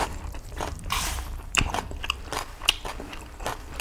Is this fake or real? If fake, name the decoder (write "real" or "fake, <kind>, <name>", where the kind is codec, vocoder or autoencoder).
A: fake, vocoder, BigVGAN v2